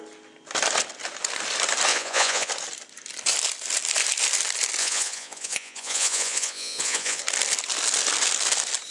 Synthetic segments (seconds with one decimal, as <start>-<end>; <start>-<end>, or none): 1.9-2.5; 4.8-7.2